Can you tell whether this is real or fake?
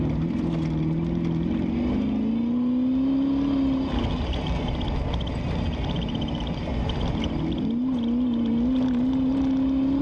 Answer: real